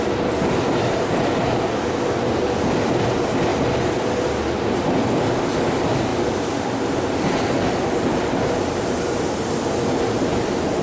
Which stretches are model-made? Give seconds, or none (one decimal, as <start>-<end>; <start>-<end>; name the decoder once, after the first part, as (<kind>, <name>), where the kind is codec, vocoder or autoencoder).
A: none